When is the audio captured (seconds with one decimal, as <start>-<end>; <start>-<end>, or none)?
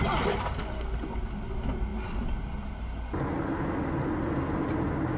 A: 0.0-5.2